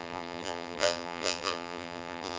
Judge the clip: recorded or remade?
remade